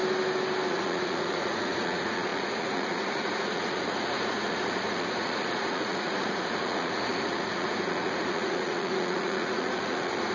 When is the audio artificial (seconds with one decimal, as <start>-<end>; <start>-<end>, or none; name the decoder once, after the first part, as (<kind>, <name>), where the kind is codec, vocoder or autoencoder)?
0.7-10.3 (vocoder, Vocos)